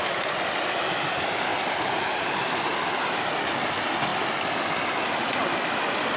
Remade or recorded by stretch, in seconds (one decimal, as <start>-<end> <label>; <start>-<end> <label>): 0.0-6.2 recorded